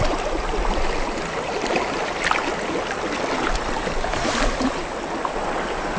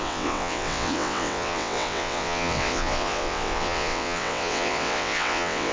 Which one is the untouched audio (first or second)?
first